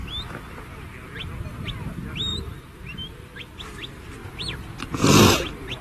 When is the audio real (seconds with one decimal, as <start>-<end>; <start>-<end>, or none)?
0.0-2.3; 3.6-5.8